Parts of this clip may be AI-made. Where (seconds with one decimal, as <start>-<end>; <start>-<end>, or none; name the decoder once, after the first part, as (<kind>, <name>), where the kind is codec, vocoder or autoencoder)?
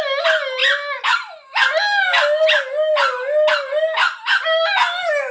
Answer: none